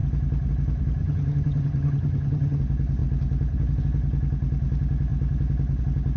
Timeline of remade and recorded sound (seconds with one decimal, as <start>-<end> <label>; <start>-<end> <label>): 0.0-1.0 recorded; 1.0-2.6 remade; 2.6-6.2 recorded